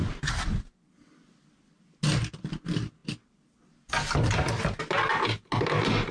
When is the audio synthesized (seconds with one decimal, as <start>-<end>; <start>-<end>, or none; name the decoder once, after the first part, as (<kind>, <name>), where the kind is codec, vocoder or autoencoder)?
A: none